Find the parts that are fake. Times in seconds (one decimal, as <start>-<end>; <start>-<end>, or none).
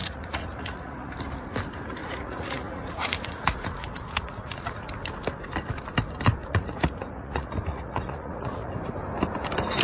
0.0-1.1; 2.0-4.8; 6.4-8.7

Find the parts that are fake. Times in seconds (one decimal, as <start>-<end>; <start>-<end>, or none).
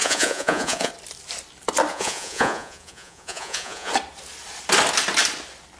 0.0-0.9; 1.9-3.9